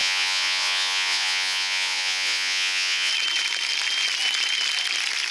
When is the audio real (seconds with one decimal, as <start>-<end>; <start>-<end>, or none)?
3.1-5.3